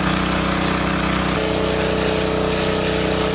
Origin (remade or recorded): recorded